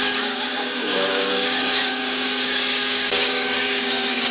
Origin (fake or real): fake